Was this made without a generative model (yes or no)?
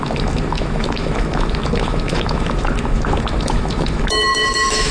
no